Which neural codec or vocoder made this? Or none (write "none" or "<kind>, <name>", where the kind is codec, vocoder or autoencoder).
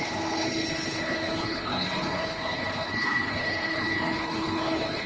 codec, HILCodec